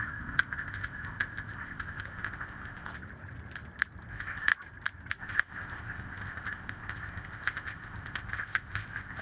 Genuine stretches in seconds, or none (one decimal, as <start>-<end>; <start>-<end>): 2.9-4.1; 4.5-5.2